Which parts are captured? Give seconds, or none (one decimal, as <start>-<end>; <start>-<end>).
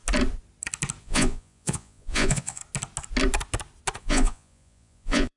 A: 0.0-1.0; 2.6-4.0